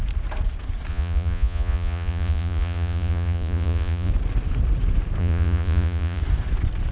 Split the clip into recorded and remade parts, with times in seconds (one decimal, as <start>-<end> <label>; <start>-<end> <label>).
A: 0.0-0.9 recorded; 0.9-4.1 remade; 4.1-5.2 recorded; 5.2-6.2 remade; 6.2-6.9 recorded

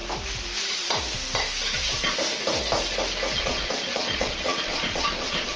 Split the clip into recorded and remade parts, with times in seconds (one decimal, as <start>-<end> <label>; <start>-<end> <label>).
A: 0.0-3.4 recorded; 3.4-5.6 remade

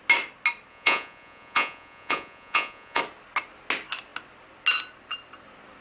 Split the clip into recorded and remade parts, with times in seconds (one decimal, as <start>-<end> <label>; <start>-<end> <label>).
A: 0.0-0.7 recorded; 0.7-3.0 remade; 3.0-5.8 recorded